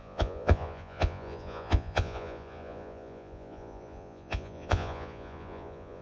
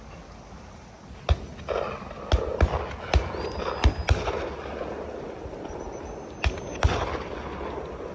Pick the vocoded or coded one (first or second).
first